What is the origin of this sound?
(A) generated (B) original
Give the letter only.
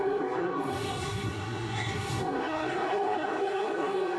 A